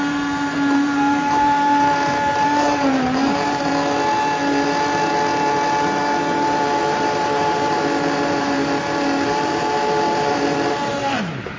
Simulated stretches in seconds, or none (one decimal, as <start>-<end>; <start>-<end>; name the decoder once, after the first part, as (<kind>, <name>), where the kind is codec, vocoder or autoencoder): 0.0-3.7 (vocoder, BigVGAN v2); 6.8-11.6